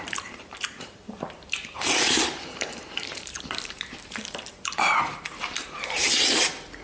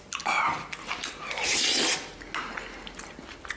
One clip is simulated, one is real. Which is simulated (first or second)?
first